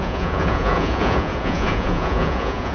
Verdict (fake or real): fake